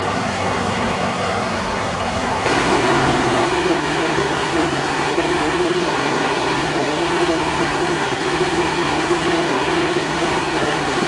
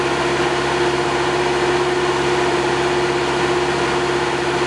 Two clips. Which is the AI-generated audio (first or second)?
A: first